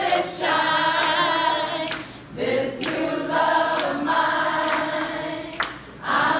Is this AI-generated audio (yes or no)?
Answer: no